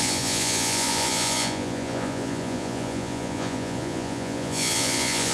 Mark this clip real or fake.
fake